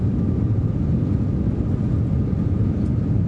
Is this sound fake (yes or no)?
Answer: no